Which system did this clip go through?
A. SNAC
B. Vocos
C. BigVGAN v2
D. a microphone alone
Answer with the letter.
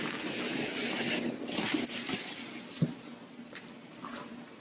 D